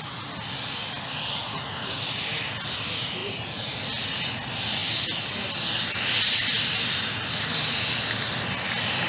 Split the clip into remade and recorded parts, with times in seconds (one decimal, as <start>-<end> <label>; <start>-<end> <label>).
0.0-4.8 recorded; 4.8-6.9 remade; 6.9-9.1 recorded